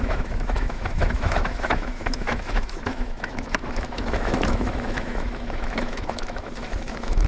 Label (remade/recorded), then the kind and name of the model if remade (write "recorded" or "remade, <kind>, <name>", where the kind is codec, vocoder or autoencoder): remade, autoencoder, DAC-VAE